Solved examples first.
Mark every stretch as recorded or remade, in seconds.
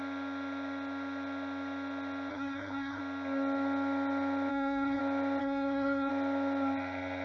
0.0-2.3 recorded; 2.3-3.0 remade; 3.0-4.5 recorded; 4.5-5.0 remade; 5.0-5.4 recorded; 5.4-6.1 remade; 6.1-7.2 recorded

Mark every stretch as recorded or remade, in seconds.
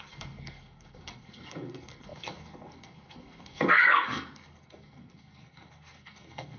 0.0-6.6 remade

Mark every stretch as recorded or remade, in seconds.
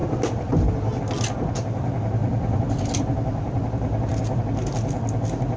0.0-1.0 remade; 1.0-2.2 recorded; 2.2-4.4 remade; 4.4-5.6 recorded